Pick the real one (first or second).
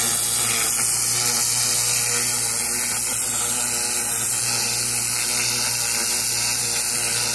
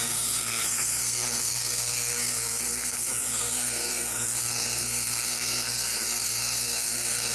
first